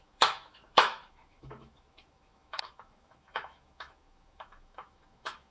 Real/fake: fake